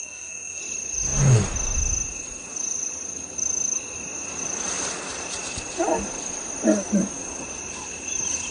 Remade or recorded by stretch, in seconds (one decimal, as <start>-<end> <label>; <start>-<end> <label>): 0.0-0.6 remade; 0.6-8.5 recorded